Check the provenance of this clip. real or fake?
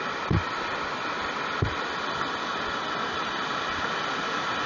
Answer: fake